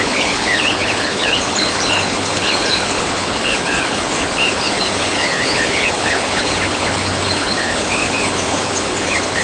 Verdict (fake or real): fake